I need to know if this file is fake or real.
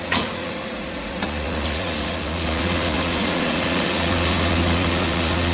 fake